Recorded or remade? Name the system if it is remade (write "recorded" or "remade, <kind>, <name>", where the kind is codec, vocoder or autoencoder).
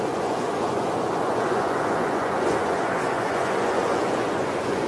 remade, vocoder, Vocos